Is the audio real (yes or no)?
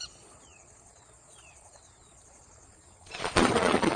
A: no